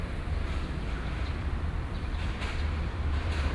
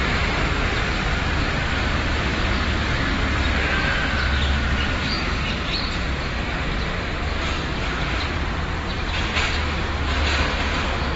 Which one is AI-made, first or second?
first